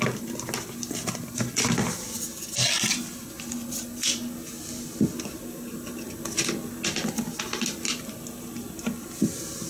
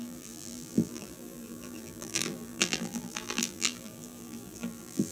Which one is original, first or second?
first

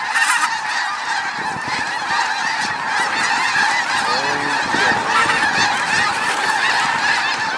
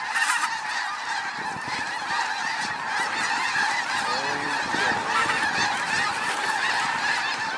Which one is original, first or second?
first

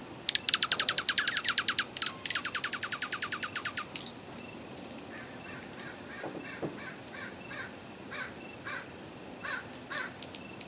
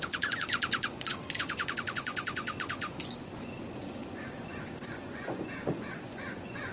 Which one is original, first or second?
first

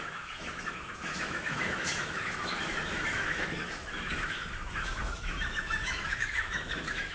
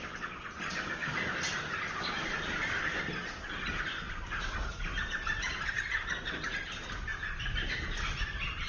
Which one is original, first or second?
second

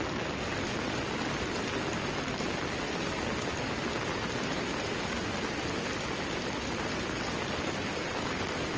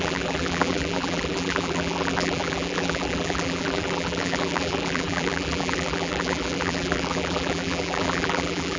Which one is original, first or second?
first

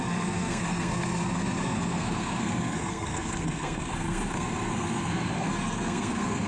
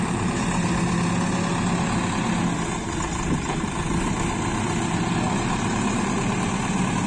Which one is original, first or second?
second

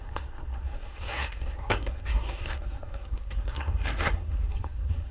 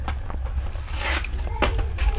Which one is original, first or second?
second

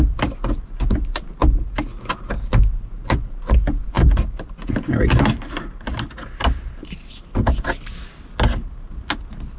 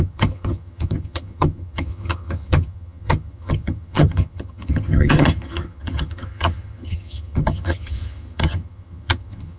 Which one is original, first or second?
first